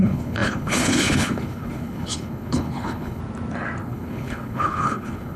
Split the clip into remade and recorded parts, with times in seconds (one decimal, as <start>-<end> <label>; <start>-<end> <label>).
0.0-3.2 remade; 3.2-3.8 recorded; 3.8-5.4 remade